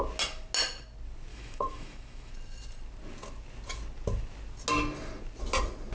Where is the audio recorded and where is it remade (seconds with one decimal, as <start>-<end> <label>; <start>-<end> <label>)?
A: 0.0-1.3 recorded; 1.3-2.3 remade; 2.3-5.9 recorded